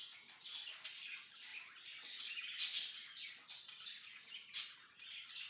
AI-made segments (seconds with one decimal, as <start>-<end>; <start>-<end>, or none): none